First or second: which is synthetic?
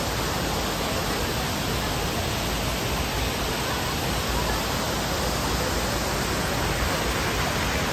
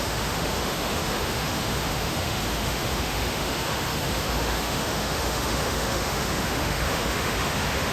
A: second